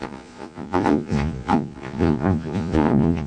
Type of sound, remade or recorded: remade